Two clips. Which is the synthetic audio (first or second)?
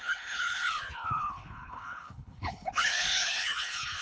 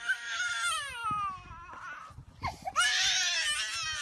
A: first